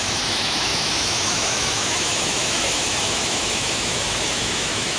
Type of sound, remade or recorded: remade